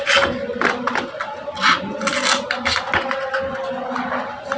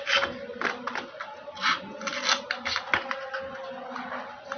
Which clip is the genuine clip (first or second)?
second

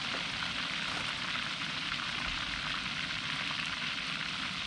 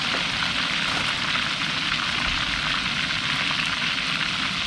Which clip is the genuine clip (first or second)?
second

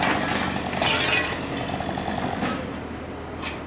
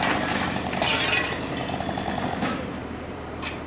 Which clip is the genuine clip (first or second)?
first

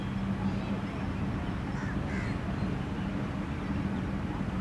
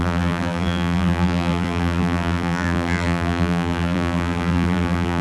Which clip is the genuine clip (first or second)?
first